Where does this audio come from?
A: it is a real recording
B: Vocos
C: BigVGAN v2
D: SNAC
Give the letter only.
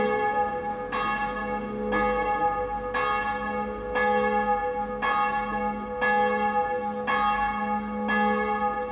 A